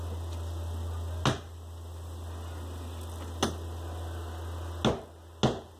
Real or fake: real